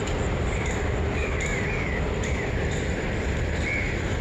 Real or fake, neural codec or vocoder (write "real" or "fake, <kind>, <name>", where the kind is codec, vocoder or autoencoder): fake, vocoder, BigVGAN v2